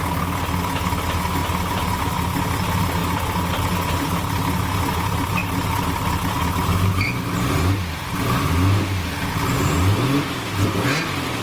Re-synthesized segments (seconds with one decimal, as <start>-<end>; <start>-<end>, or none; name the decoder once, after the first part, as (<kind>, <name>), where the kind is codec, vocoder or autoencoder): 1.4-2.0 (vocoder, BigVGAN v2)